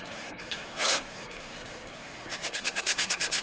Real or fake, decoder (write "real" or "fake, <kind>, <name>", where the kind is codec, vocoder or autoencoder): fake, codec, SNAC